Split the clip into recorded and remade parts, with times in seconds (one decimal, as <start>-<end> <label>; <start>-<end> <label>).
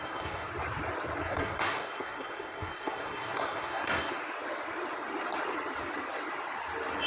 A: 0.0-0.5 remade; 0.5-1.2 recorded; 1.2-4.2 remade; 4.2-7.1 recorded